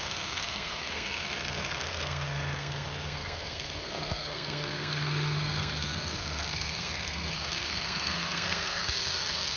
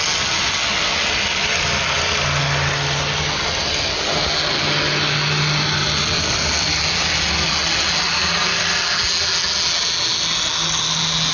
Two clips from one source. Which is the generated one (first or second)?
first